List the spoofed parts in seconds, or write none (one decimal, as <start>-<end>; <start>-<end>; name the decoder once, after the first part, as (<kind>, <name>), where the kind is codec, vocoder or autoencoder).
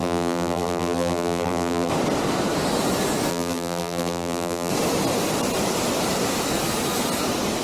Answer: 0.0-1.9 (vocoder, BigVGAN v2); 3.3-4.7